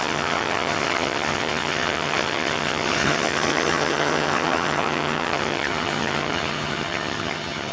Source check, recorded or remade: remade